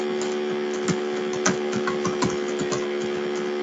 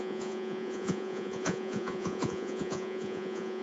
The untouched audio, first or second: first